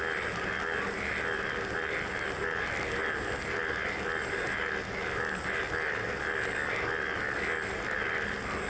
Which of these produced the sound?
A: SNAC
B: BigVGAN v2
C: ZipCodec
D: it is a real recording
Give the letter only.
D